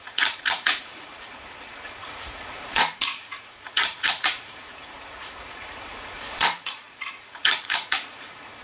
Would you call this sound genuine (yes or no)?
no